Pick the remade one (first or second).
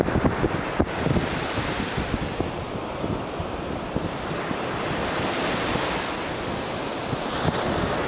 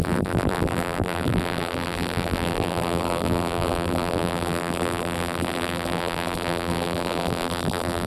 second